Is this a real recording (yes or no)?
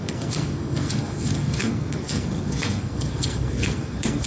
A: no